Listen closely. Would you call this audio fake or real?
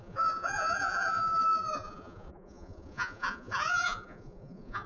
fake